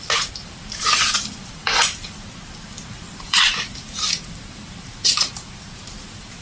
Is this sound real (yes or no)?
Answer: no